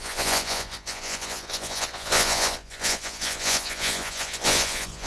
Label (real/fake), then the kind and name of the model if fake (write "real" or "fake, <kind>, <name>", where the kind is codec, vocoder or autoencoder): fake, vocoder, Vocos